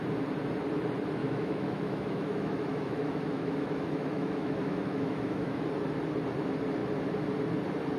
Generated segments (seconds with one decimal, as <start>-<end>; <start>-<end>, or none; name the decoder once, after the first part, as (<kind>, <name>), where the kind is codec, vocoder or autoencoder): 1.2-5.6 (autoencoder, DAC-VAE)